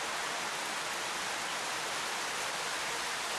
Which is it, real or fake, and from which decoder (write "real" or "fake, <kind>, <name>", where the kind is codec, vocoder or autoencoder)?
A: real